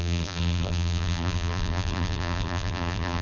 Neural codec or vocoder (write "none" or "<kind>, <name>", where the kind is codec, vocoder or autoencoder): vocoder, BigVGAN v2